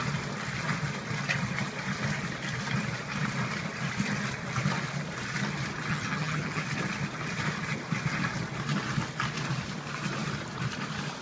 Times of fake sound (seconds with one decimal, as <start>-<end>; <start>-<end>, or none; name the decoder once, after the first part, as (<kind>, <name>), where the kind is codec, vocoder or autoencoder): 5.9-6.6 (vocoder, HiFi-GAN)